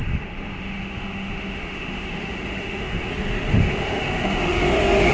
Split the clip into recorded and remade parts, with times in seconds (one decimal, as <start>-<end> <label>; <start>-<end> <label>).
0.0-3.1 remade; 3.1-3.5 recorded; 3.5-5.1 remade